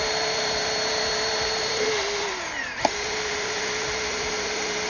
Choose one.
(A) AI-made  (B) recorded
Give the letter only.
A